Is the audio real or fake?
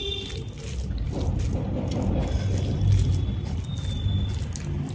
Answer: real